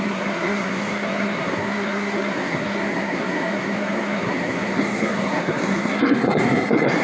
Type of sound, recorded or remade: remade